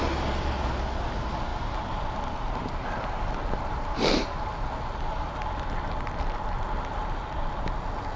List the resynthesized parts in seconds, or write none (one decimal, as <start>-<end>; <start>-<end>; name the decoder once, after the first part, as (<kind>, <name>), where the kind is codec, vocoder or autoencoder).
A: none